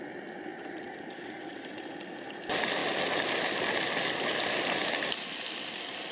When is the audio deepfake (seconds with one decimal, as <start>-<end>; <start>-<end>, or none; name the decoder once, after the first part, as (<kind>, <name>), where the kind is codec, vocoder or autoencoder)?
0.5-1.8 (vocoder, BigVGAN v2); 2.8-3.7; 4.8-6.1